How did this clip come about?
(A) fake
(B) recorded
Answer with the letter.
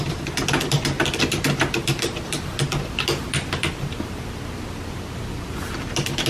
A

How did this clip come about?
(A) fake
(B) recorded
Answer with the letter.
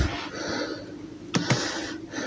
B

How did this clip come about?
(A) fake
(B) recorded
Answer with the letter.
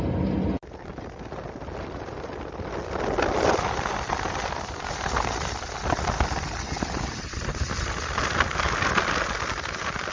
B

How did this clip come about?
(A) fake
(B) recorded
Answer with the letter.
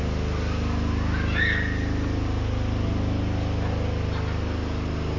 B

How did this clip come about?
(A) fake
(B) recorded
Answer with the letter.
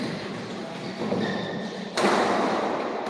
B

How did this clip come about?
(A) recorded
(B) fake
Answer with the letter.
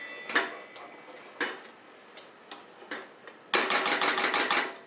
A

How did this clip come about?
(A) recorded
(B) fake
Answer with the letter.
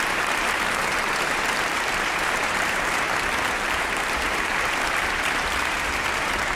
B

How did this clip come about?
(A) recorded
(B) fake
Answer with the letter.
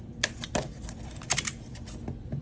B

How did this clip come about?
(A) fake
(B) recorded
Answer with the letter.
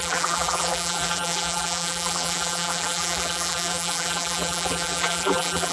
A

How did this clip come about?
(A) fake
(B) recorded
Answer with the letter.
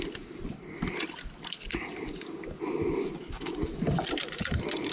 A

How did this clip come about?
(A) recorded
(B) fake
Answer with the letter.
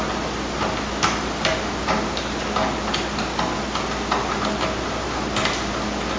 A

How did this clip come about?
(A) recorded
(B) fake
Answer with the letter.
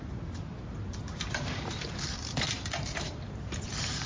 B